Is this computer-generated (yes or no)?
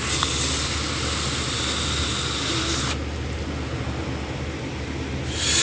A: no